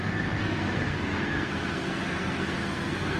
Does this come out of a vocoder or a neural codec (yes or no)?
yes